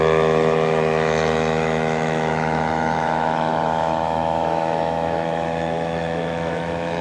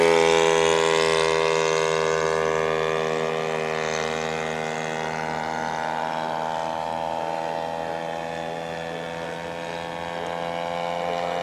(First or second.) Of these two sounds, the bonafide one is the second